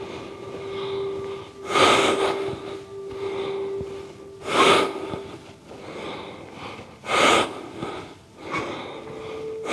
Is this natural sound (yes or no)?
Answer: yes